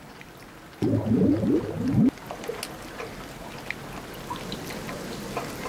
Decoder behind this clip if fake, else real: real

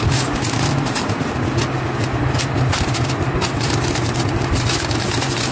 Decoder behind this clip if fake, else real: real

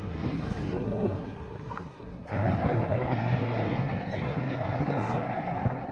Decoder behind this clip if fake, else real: fake, codec, SNAC